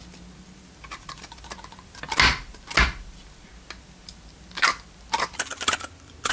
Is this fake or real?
real